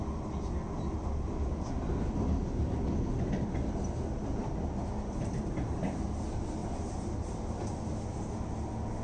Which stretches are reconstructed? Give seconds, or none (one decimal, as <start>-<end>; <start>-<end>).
none